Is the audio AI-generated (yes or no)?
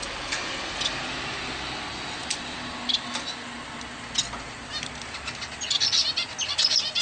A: no